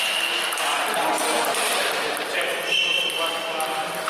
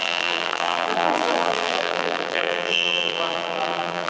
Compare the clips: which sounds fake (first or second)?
second